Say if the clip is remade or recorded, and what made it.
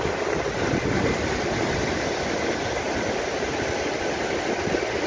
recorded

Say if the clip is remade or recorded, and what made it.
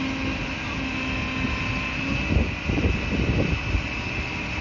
recorded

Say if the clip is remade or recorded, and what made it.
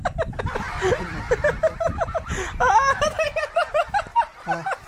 remade, vocoder, BigVGAN v2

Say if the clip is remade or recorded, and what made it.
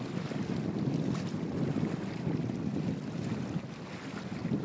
recorded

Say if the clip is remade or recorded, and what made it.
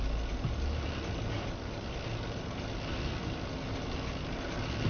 recorded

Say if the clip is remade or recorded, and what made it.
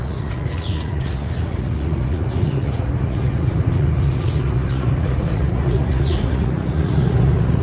remade, vocoder, Vocos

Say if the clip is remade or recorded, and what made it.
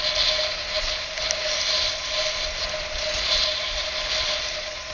recorded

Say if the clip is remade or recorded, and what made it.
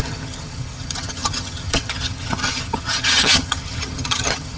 remade, vocoder, HiFi-GAN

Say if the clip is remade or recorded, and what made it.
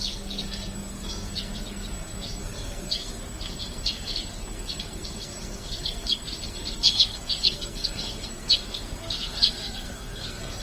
remade, codec, SNAC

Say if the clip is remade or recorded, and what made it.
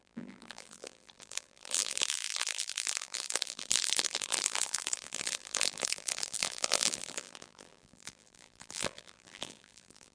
remade, vocoder, BigVGAN v2